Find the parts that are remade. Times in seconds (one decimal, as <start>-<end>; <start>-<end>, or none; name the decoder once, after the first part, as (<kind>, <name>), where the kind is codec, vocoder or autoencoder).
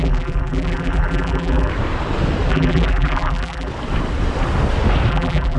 0.0-1.7 (vocoder, BigVGAN v2); 2.5-3.7; 5.1-5.6